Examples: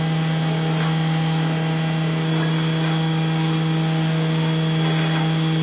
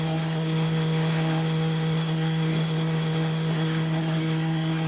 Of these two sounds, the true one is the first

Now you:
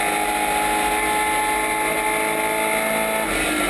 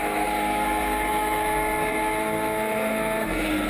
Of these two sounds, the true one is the first